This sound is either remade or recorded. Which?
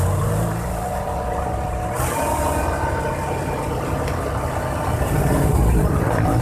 recorded